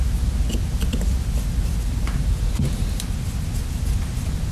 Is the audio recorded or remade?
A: recorded